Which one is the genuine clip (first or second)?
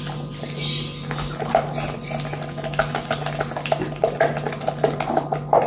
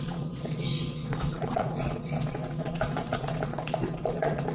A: first